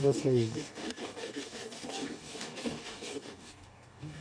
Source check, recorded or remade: remade